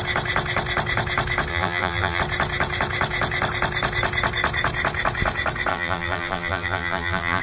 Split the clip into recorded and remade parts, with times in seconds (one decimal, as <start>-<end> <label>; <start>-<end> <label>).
0.0-1.5 recorded; 1.5-2.2 remade; 2.2-5.7 recorded; 5.7-7.4 remade